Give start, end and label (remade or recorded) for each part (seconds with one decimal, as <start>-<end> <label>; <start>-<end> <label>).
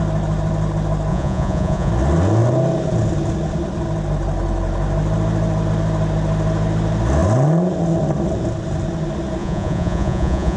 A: 0.0-1.1 recorded; 1.1-1.9 remade; 1.9-9.4 recorded; 9.4-10.6 remade